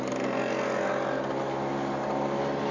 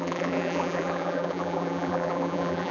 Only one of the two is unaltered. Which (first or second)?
first